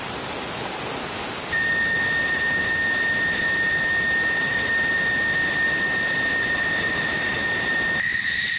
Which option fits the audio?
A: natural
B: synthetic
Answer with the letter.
A